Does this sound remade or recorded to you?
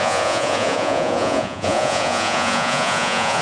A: remade